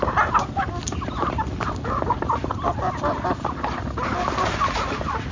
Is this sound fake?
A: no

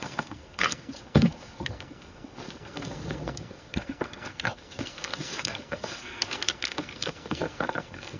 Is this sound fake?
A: yes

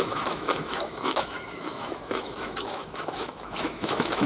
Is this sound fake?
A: yes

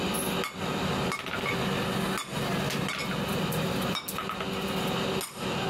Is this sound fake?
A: no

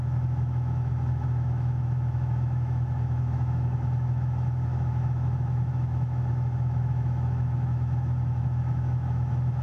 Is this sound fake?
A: yes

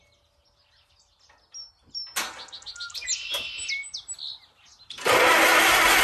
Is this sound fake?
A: no